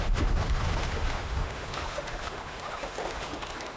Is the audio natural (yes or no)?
no